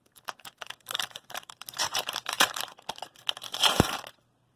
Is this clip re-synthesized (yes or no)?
yes